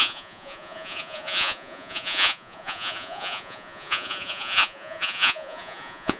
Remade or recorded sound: remade